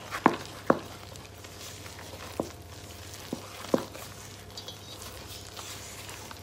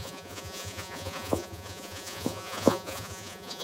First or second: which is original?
first